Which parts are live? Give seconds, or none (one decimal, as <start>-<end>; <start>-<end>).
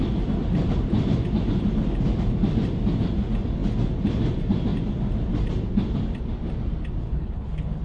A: 0.0-7.0